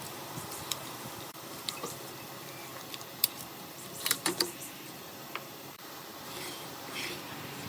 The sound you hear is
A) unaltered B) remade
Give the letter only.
B